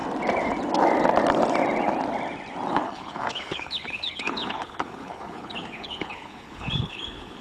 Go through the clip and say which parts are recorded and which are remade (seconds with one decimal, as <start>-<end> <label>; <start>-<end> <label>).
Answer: 0.0-2.7 recorded; 2.7-7.4 remade